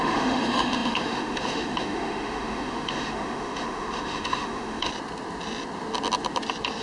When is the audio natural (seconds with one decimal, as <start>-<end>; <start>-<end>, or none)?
4.9-6.8